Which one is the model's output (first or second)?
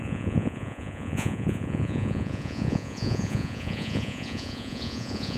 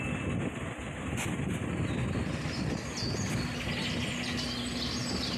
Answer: first